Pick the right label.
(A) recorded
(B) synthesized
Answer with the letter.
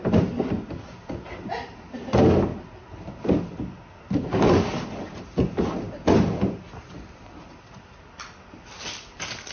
A